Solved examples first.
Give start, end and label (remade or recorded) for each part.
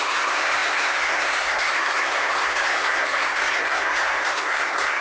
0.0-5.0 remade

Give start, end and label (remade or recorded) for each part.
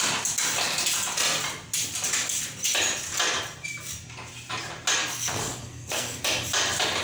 0.0-5.0 recorded; 5.0-6.2 remade; 6.2-7.0 recorded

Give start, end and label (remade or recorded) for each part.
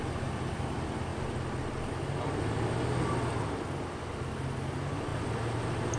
0.0-6.0 recorded